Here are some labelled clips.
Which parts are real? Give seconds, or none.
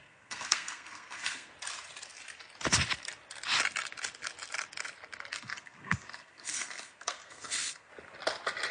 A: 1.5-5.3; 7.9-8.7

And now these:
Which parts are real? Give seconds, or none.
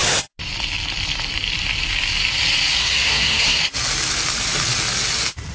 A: 0.0-2.8; 3.6-5.5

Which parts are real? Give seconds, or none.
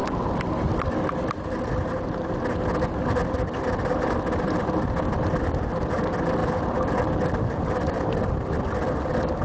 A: 0.0-9.4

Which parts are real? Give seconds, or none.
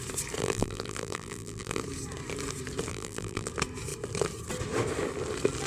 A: 0.0-0.4; 1.8-2.9; 3.5-5.7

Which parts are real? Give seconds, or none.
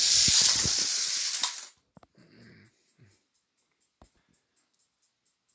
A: 0.0-5.5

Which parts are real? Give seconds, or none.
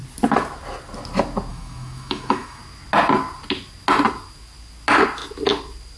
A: 0.0-1.5; 2.6-6.0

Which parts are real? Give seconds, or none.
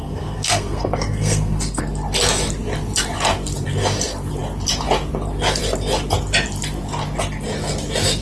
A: 1.8-8.2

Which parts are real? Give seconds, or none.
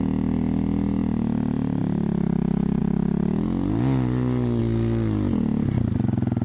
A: 0.0-1.0; 1.8-6.4